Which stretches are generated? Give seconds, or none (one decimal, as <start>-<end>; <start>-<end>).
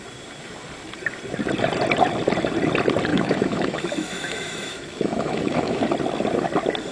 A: 3.1-5.8